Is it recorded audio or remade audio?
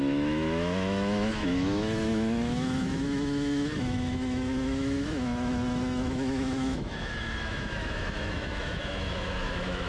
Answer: remade